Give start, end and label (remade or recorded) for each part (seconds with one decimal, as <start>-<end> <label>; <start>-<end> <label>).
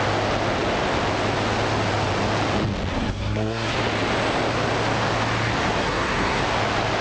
0.0-2.9 recorded; 2.9-3.7 remade; 3.7-5.8 recorded; 5.8-6.4 remade; 6.4-7.0 recorded